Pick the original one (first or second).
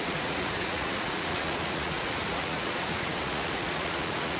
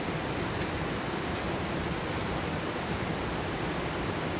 second